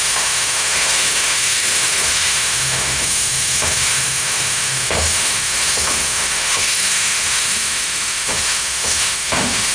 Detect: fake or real fake